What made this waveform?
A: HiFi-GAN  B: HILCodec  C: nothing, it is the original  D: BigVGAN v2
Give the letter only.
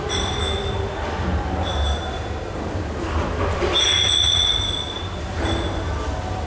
C